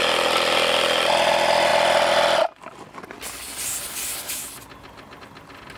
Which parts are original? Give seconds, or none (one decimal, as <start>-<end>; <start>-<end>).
0.0-5.8